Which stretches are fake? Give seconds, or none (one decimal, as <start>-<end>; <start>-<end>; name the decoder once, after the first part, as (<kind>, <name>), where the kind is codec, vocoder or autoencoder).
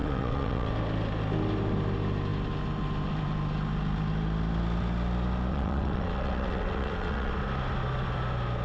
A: 0.0-0.7 (vocoder, WaveNeXt); 5.5-7.3